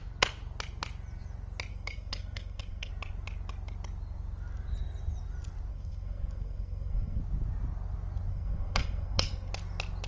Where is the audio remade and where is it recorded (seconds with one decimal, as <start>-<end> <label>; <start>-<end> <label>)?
0.0-1.7 recorded; 1.7-2.9 remade; 2.9-5.7 recorded; 5.7-7.2 remade; 7.2-8.3 recorded; 8.3-9.5 remade; 9.5-10.1 recorded